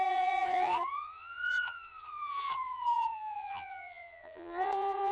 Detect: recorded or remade remade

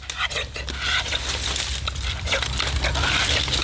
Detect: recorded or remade recorded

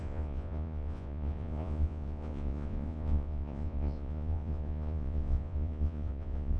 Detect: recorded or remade remade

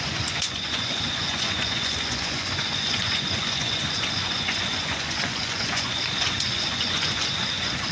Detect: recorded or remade remade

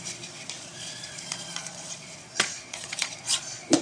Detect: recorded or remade remade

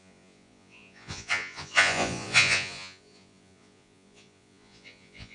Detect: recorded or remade remade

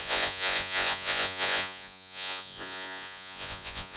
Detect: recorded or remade remade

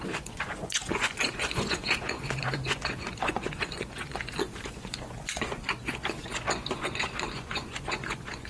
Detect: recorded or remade remade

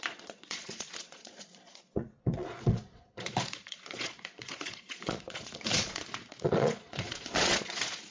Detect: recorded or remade remade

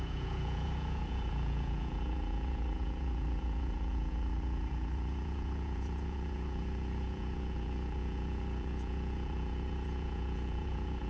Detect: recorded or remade remade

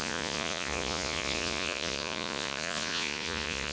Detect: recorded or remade remade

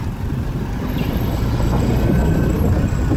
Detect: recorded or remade recorded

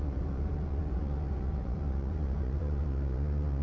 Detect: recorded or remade remade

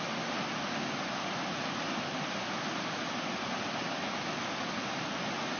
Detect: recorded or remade recorded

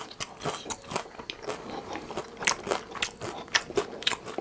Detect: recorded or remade recorded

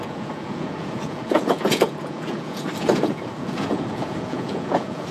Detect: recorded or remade remade